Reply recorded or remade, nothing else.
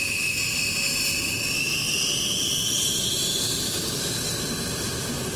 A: recorded